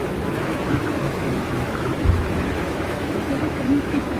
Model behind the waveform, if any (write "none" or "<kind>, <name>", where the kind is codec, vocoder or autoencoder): autoencoder, DAC-VAE